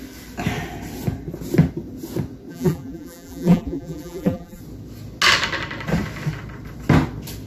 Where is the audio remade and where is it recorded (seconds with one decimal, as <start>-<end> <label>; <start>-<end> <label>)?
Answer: 0.0-2.5 recorded; 2.5-4.6 remade; 4.6-7.5 recorded